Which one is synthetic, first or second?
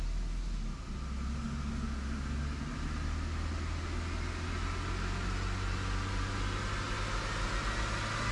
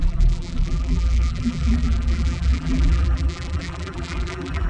second